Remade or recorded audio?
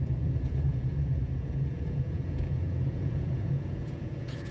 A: remade